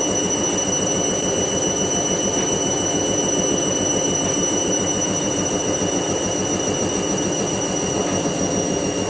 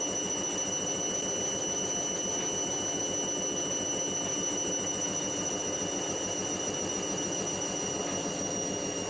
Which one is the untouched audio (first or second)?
second